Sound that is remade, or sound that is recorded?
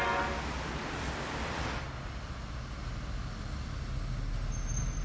recorded